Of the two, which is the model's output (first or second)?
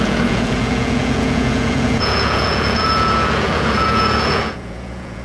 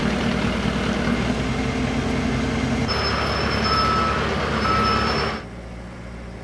first